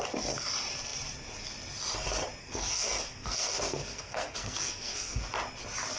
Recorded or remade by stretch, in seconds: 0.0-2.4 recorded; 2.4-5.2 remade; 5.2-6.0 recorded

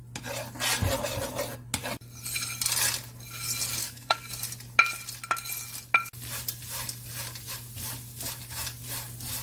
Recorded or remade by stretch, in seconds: 0.0-3.8 recorded; 3.8-4.3 remade; 4.3-9.4 recorded

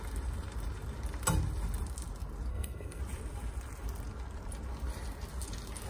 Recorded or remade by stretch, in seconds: 0.0-2.5 recorded; 2.5-3.0 remade; 3.0-5.9 recorded

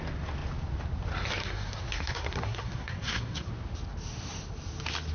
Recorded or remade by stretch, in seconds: 0.0-1.4 recorded; 1.4-3.5 remade; 3.5-5.1 recorded

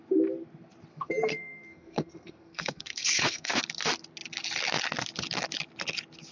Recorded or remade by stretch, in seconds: 0.0-0.9 recorded; 0.9-3.6 remade; 3.6-6.3 recorded

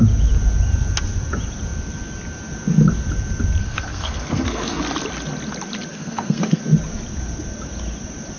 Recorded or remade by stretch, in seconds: 0.0-3.6 recorded; 3.6-4.8 remade; 4.8-5.9 recorded; 5.9-6.6 remade; 6.6-8.4 recorded

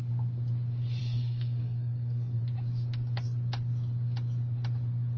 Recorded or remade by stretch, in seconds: 0.0-1.0 recorded; 1.0-2.4 remade; 2.4-5.2 recorded

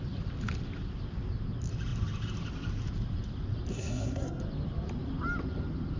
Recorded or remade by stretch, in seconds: 0.0-3.7 recorded; 3.7-4.4 remade; 4.4-6.0 recorded